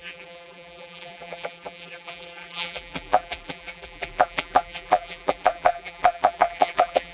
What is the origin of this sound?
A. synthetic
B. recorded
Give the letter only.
A